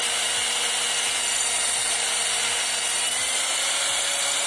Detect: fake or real real